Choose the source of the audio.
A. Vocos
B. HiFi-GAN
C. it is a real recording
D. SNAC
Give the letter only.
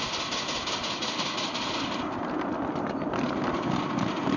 C